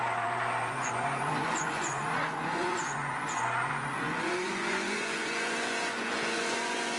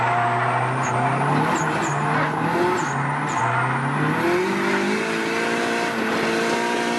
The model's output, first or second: first